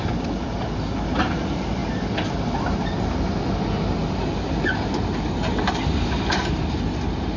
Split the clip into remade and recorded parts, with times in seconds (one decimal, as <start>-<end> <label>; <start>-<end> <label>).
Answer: 0.0-7.4 recorded